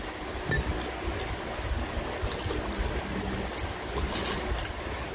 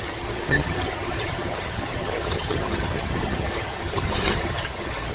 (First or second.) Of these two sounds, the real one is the first